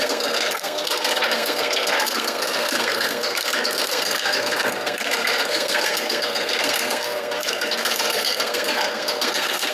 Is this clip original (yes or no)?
no